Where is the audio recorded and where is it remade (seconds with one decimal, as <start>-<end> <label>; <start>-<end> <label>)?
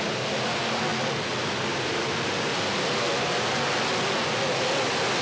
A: 0.0-5.2 recorded